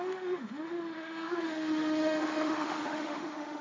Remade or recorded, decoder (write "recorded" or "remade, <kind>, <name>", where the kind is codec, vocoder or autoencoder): remade, autoencoder, DAC-VAE